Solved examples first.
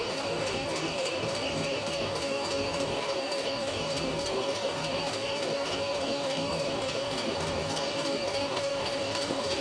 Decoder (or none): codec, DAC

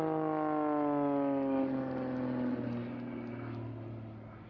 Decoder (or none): none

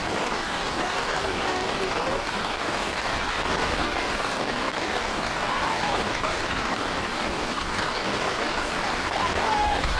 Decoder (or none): codec, DAC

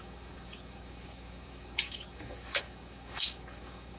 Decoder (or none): codec, DAC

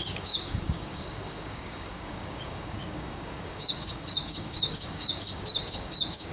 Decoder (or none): codec, DAC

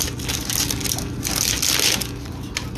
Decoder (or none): none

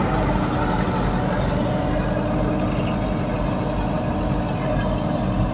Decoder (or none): none